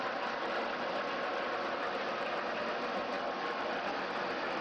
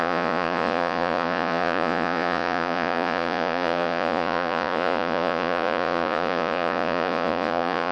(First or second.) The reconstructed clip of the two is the second